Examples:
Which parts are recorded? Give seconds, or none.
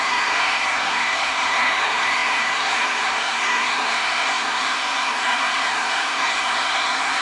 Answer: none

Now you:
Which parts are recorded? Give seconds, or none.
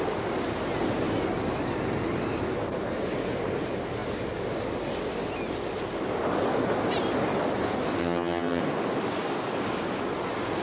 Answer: 0.0-8.0; 8.6-10.6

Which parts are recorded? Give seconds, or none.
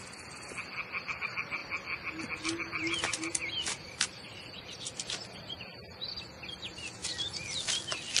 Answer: 0.0-8.2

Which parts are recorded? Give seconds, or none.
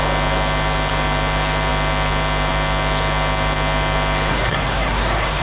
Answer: 0.0-4.3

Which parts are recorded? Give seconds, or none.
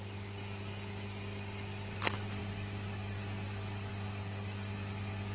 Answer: 0.0-5.3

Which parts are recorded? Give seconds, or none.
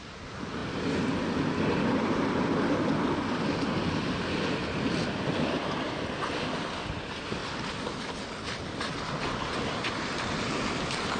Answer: 0.0-11.2